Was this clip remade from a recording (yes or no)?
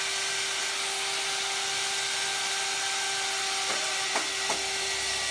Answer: no